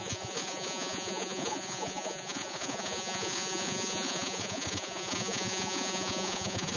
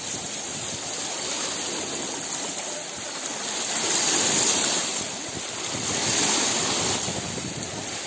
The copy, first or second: first